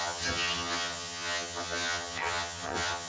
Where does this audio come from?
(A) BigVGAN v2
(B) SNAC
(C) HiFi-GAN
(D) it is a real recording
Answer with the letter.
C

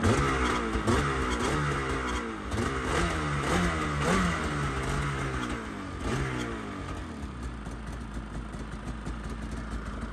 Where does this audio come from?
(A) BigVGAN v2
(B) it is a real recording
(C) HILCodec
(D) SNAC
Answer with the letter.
B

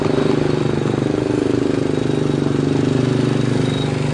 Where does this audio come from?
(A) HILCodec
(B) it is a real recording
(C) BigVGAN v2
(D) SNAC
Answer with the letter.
B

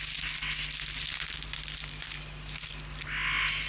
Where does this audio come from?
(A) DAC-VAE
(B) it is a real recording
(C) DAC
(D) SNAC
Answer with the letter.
B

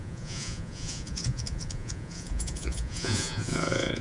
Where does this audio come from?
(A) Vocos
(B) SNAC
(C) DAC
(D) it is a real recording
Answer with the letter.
A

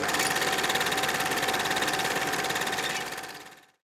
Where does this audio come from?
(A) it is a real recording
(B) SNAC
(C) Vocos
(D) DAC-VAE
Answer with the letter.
A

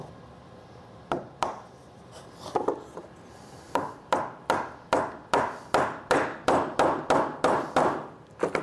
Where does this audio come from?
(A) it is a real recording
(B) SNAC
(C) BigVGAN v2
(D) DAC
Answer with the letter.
A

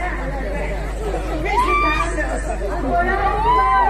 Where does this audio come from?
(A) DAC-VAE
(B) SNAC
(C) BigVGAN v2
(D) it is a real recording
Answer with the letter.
D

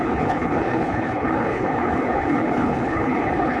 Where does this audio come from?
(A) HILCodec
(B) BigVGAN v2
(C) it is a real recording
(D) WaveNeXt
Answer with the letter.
A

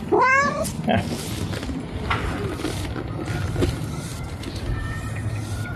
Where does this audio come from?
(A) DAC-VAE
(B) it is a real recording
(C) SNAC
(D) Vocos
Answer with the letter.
B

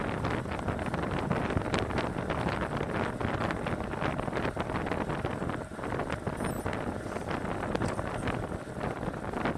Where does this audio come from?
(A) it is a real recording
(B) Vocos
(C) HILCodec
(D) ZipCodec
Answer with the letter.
A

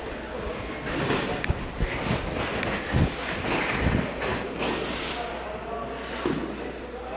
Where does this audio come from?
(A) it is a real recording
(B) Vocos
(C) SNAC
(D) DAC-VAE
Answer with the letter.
A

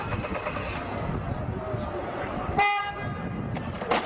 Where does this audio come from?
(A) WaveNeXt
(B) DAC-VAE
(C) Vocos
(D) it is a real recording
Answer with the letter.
D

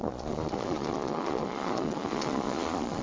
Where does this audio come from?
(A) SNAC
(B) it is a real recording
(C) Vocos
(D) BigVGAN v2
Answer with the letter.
C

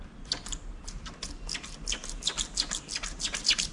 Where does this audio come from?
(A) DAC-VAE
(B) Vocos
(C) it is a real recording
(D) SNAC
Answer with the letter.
C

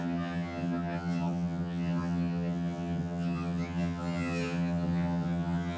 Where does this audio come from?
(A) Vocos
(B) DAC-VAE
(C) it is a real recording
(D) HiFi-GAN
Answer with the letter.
D